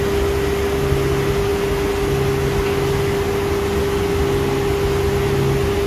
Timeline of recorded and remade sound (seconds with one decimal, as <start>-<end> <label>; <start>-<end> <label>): 0.0-5.9 recorded